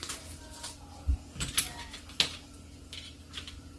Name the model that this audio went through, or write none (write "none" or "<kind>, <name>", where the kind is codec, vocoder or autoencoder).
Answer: none